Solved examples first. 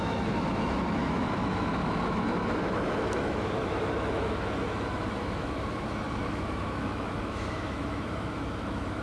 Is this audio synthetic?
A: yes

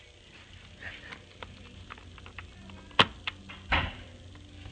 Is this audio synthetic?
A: no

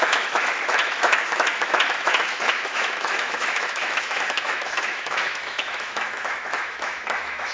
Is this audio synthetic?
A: yes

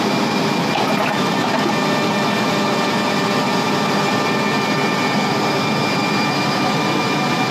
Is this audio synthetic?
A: no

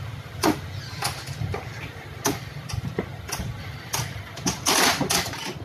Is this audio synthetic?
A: no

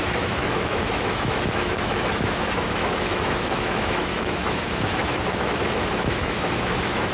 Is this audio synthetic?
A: yes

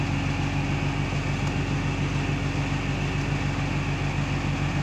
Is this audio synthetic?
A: no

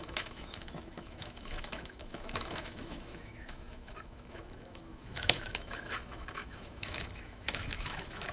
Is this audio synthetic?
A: yes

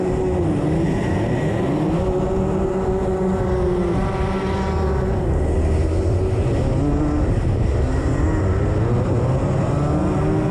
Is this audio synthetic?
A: no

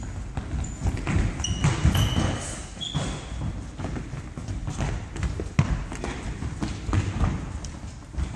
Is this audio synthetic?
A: no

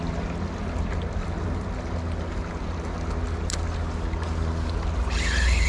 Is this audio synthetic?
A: no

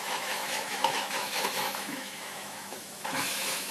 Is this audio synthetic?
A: yes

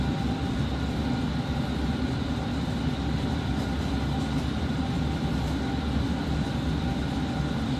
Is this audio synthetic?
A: no